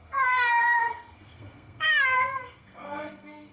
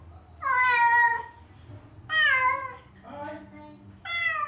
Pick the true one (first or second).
second